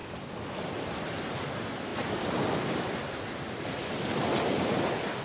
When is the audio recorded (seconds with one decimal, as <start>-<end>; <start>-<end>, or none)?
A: 0.0-5.2